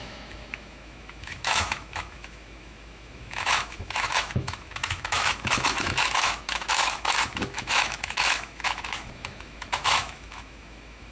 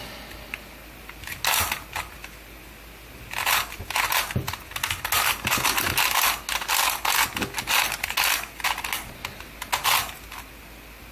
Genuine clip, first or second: second